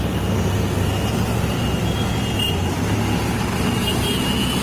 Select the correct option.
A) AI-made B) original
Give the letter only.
B